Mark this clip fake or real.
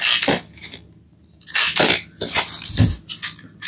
real